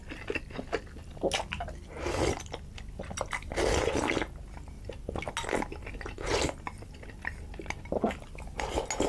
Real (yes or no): yes